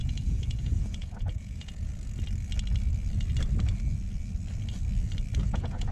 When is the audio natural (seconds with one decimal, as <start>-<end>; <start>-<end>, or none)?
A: 1.9-5.4